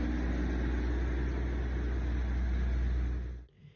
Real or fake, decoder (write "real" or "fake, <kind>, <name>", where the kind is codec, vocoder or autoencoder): real